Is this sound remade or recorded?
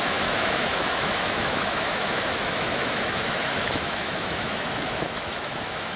remade